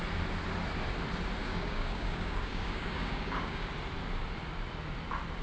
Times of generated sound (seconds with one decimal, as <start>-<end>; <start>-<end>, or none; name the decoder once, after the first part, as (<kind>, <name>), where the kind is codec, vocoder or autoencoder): 1.4-3.7 (codec, DAC)